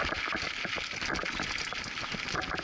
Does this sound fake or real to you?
real